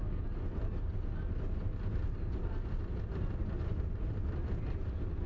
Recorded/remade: recorded